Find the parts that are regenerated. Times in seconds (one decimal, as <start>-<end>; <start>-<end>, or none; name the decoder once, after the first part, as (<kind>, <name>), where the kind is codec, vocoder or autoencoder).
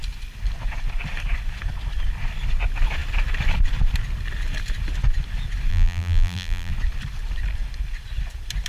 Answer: 5.7-6.7 (vocoder, BigVGAN v2)